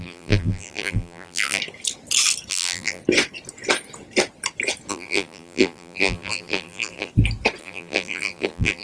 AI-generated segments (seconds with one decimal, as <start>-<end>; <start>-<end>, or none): 0.0-1.6; 2.5-3.0; 4.9-7.1; 7.6-8.8